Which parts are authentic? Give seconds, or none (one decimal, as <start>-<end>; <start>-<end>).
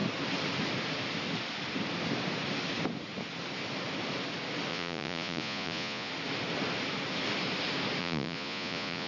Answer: 0.0-4.7; 6.1-8.0